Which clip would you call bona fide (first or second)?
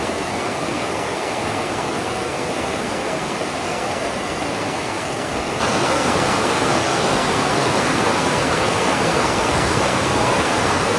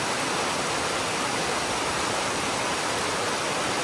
second